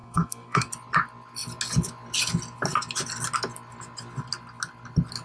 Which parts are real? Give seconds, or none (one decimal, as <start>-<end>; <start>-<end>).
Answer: 0.7-5.2